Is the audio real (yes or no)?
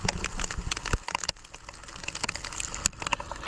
yes